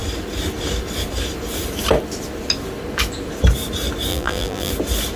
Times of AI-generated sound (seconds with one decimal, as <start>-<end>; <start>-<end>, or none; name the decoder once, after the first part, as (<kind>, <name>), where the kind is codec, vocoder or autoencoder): 4.1-4.7 (vocoder, BigVGAN v2)